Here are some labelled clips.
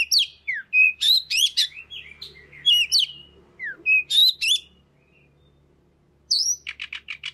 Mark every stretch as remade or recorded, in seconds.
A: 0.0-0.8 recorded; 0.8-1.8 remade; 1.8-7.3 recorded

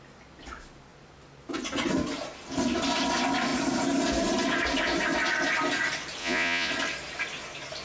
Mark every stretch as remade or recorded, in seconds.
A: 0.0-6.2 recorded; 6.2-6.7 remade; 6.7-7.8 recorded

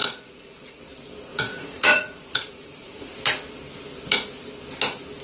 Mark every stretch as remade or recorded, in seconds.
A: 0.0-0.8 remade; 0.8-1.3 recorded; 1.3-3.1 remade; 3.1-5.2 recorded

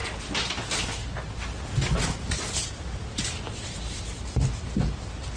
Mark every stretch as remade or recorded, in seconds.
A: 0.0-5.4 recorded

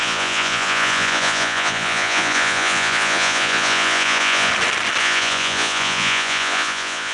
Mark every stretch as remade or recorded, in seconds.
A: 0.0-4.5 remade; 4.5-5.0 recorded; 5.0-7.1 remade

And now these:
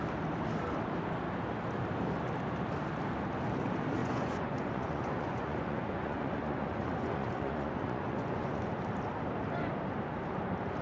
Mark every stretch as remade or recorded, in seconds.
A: 0.0-4.0 recorded; 4.0-8.7 remade; 8.7-10.8 recorded